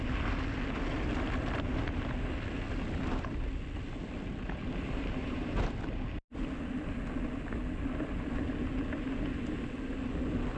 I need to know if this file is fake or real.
real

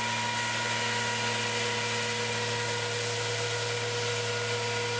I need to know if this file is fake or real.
real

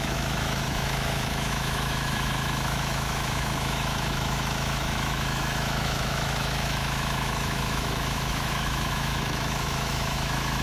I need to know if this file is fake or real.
fake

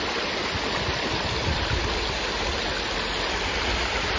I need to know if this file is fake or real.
real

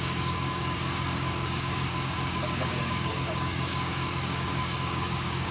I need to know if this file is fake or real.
fake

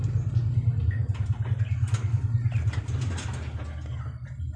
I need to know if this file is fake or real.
real